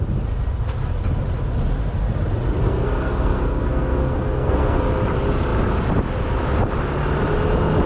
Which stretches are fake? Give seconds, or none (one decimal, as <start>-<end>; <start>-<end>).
2.6-4.8